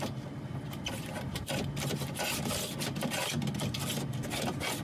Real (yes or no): yes